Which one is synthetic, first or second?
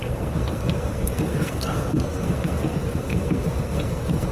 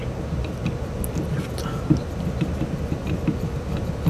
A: first